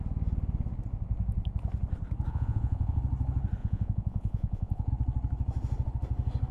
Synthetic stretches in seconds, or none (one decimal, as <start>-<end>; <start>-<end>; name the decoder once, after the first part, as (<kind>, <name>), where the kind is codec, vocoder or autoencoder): 2.3-3.0 (vocoder, Vocos); 3.6-4.9